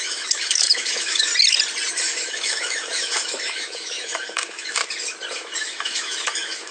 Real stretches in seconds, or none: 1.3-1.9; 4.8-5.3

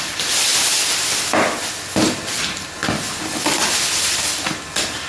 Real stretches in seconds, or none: 0.0-5.1

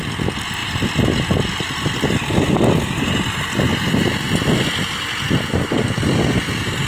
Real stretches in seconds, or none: 0.0-6.9